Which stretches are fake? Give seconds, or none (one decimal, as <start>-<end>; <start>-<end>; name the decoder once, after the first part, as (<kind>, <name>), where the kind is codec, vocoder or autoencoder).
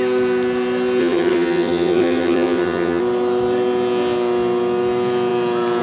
1.0-3.0 (vocoder, HiFi-GAN)